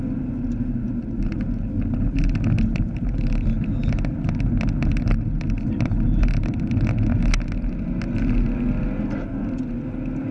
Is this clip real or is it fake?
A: real